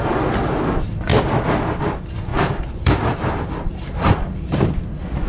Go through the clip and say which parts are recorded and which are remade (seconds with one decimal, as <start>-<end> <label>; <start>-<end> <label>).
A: 0.0-1.1 remade; 1.1-1.8 recorded; 1.8-5.3 remade